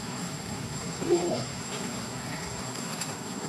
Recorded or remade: remade